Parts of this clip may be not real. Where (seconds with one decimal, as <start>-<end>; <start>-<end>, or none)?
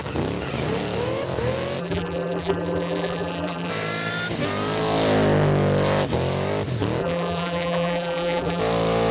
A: 1.8-3.7; 7.0-8.6